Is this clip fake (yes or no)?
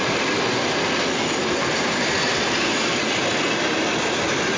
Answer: yes